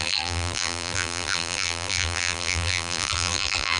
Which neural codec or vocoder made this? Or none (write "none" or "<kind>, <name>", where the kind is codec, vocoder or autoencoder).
vocoder, BigVGAN v2